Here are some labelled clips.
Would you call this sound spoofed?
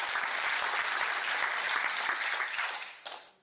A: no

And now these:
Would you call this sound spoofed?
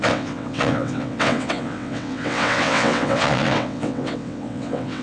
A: yes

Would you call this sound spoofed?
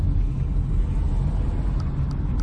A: no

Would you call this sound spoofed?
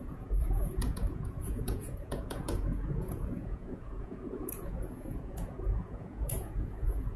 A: yes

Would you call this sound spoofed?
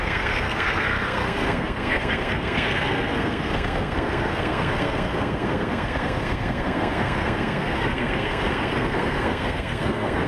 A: yes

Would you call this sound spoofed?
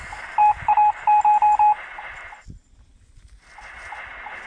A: no